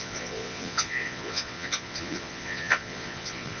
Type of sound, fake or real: fake